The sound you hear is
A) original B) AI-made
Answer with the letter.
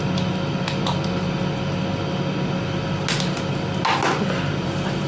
A